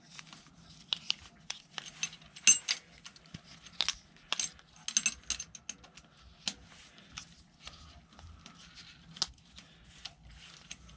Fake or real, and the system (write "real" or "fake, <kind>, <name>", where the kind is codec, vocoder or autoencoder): real